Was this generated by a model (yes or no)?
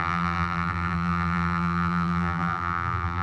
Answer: yes